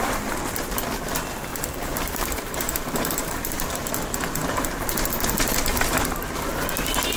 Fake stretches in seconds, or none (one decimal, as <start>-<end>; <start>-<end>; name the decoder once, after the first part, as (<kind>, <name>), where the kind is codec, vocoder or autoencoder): 1.5-3.9 (vocoder, BigVGAN v2)